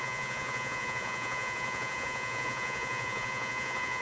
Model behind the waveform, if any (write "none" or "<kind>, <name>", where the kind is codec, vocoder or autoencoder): vocoder, Vocos